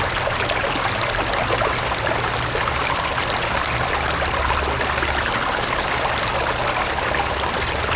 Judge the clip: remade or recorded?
recorded